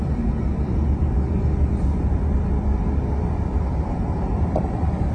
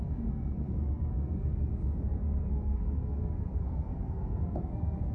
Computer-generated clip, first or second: second